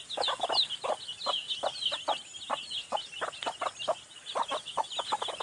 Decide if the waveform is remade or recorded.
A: recorded